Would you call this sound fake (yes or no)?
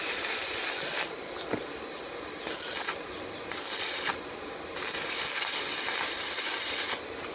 yes